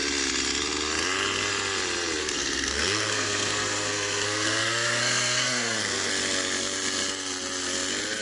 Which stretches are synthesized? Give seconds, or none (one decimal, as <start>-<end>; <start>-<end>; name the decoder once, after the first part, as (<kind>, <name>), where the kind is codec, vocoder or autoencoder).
2.2-6.1 (codec, SNAC)